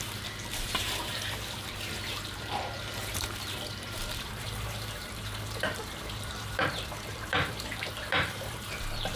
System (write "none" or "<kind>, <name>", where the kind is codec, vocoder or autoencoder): vocoder, BigVGAN v2